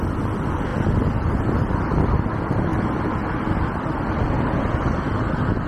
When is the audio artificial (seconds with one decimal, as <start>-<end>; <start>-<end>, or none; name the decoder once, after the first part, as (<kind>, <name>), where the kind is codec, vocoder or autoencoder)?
none